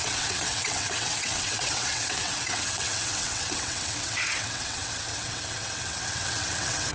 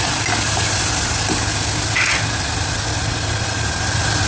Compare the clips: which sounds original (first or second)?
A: second